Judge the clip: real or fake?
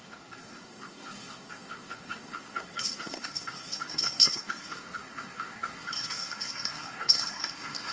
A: fake